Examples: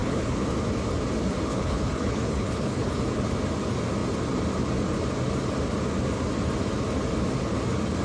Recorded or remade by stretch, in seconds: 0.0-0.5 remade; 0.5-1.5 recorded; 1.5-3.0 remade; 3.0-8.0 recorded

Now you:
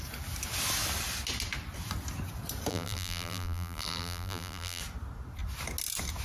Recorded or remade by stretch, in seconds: 0.0-2.7 recorded; 2.7-4.8 remade; 4.8-6.2 recorded